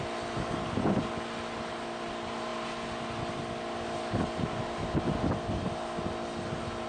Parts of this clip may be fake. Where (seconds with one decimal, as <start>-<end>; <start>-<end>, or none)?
none